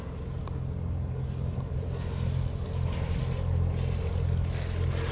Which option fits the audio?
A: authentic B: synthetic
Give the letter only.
A